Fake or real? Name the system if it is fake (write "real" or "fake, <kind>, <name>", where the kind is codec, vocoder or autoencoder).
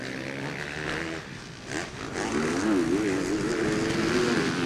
real